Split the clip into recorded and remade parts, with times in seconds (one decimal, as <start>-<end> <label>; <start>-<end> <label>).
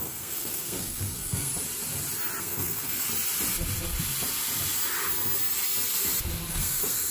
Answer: 0.0-1.5 remade; 1.5-2.4 recorded; 2.4-3.1 remade; 3.1-6.5 recorded; 6.5-7.1 remade